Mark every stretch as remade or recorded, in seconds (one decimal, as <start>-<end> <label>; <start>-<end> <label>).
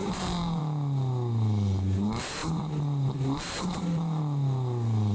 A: 0.0-0.6 remade; 0.6-2.4 recorded; 2.4-4.2 remade; 4.2-5.1 recorded